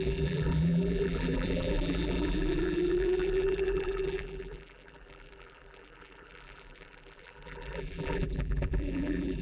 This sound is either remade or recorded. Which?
remade